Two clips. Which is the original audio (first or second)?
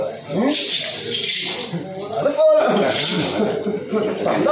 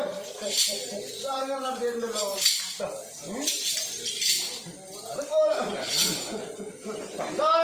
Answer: first